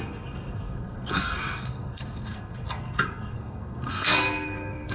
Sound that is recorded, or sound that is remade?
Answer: remade